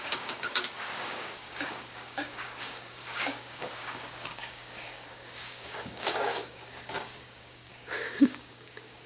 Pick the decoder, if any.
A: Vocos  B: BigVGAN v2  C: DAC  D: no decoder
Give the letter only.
C